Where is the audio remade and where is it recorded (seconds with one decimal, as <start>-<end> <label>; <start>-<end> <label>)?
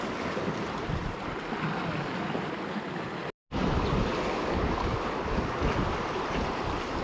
0.0-7.0 recorded